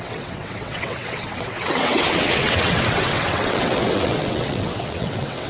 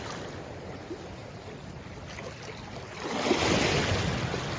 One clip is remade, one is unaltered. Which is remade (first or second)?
first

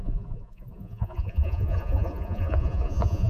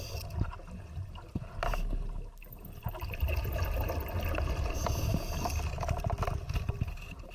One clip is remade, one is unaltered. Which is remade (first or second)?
first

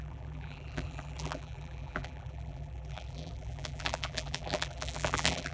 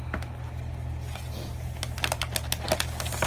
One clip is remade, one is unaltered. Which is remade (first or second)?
first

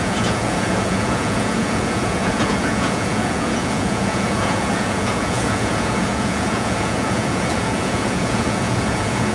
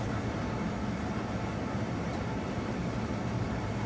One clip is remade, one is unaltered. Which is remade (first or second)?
first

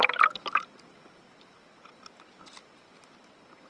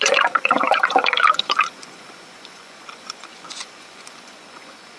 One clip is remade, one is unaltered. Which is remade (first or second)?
second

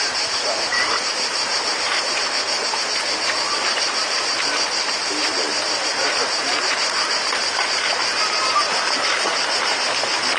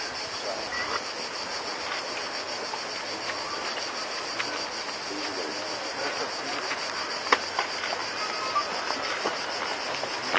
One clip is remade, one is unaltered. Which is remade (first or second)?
first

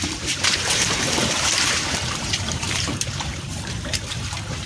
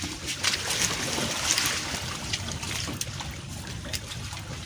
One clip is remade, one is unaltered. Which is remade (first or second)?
first